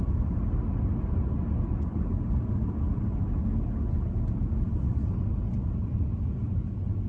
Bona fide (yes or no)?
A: yes